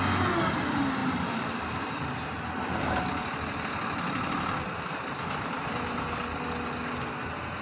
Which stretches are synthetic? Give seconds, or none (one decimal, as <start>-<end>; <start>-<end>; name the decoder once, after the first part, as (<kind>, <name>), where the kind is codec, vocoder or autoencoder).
1.0-3.0 (vocoder, BigVGAN v2)